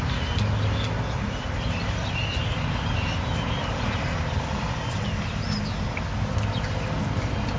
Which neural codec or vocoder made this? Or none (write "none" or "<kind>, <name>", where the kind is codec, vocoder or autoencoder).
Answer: none